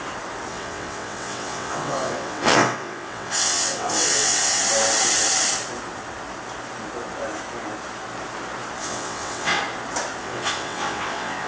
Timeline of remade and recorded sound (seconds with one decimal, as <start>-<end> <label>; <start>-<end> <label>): 0.0-0.5 recorded; 0.5-4.6 remade; 4.6-8.8 recorded; 8.8-9.6 remade; 9.6-10.2 recorded; 10.2-11.5 remade